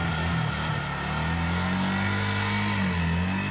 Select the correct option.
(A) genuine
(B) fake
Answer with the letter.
A